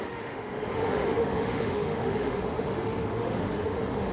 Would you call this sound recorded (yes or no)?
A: no